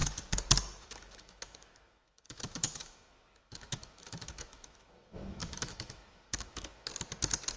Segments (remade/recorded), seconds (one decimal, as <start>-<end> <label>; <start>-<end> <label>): 0.0-0.8 recorded; 0.8-6.9 remade; 6.9-7.6 recorded